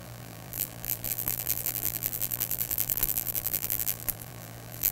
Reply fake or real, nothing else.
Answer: fake